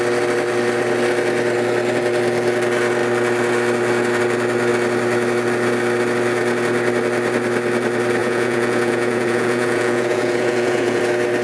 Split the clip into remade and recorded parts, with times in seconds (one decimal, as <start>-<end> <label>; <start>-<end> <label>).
0.0-8.2 recorded; 8.2-11.0 remade; 11.0-11.4 recorded